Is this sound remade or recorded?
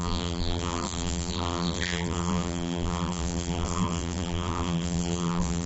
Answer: remade